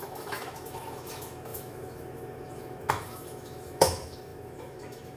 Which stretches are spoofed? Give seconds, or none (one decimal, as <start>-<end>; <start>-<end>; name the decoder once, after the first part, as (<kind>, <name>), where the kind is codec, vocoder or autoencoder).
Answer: 0.0-5.2 (autoencoder, DAC-VAE)

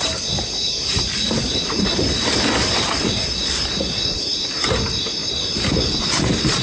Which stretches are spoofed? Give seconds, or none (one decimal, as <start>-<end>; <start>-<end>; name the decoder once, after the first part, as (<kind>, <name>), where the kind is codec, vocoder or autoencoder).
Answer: none